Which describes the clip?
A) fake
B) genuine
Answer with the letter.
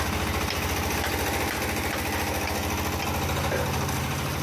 B